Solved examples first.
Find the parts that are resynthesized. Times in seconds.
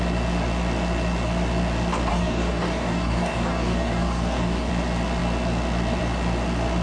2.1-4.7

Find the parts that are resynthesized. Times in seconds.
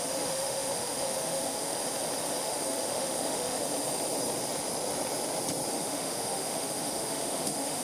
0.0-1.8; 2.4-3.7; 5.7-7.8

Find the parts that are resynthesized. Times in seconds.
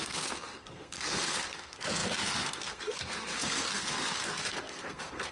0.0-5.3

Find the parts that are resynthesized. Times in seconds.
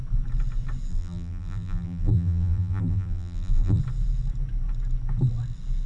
0.9-3.8